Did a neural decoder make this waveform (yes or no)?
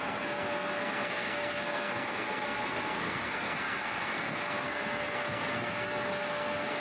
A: yes